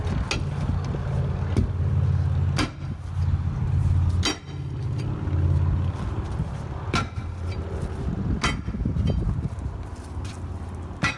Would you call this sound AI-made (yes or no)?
no